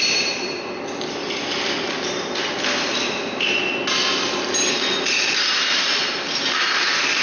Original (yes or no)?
yes